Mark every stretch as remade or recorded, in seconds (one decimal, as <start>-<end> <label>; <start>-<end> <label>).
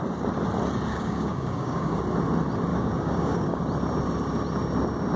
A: 0.0-0.9 recorded; 0.9-2.0 remade; 2.0-2.7 recorded; 2.7-3.6 remade; 3.6-5.2 recorded